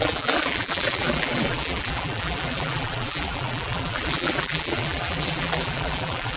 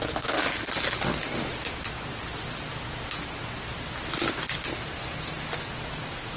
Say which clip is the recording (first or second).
second